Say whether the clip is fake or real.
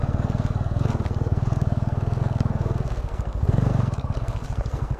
fake